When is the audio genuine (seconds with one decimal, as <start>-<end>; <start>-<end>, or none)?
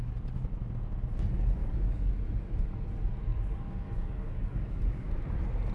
0.0-1.6; 2.1-3.3; 5.1-5.7